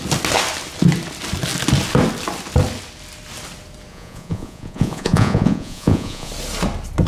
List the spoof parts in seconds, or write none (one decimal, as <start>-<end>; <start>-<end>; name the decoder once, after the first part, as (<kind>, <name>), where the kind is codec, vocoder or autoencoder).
3.9-6.3 (vocoder, Vocos)